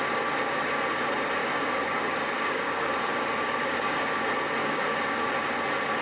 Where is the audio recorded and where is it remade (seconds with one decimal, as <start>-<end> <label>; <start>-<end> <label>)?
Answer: 0.0-1.4 recorded; 1.4-4.1 remade; 4.1-4.6 recorded; 4.6-5.3 remade; 5.3-6.0 recorded